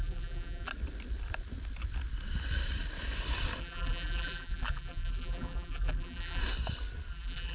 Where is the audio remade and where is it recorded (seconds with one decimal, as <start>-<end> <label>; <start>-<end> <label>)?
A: 0.0-0.7 remade; 0.7-3.6 recorded; 3.6-6.4 remade; 6.4-7.1 recorded; 7.1-7.5 remade

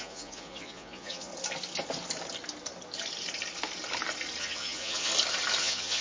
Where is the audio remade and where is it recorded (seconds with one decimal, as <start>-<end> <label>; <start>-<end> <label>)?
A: 0.0-1.3 remade; 1.3-4.4 recorded; 4.4-5.1 remade; 5.1-5.6 recorded; 5.6-6.0 remade

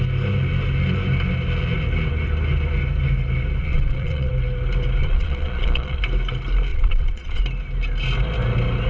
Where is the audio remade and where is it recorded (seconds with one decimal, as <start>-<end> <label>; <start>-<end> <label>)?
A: 0.0-3.6 recorded; 3.6-4.3 remade; 4.3-5.0 recorded; 5.0-6.0 remade; 6.0-6.7 recorded; 6.7-7.4 remade; 7.4-8.9 recorded

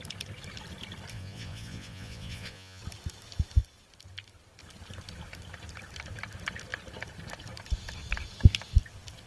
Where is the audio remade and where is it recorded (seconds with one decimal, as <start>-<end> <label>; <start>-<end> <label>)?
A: 0.0-1.1 recorded; 1.1-2.8 remade; 2.8-9.3 recorded

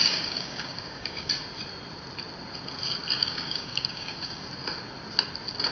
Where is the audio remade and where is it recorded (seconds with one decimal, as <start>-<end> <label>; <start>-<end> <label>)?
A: 0.0-1.3 remade; 1.3-3.2 recorded; 3.2-4.4 remade; 4.4-5.7 recorded

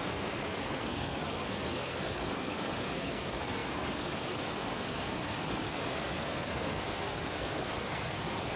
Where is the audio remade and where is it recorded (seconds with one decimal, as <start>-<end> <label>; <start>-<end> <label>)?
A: 0.0-8.6 remade